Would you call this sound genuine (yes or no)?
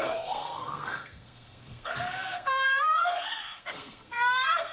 no